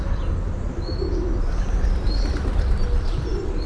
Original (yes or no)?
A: yes